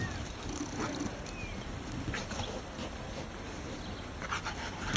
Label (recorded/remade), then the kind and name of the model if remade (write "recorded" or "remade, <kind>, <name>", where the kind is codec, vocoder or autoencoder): recorded